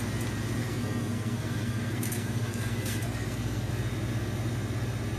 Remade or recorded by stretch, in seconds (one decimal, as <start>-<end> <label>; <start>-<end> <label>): 0.0-0.6 recorded; 0.6-3.7 remade; 3.7-5.2 recorded